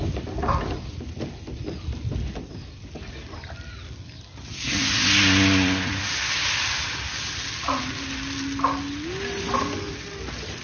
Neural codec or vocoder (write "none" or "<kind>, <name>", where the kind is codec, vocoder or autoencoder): none